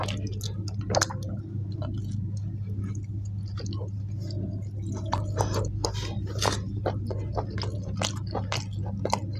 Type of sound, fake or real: real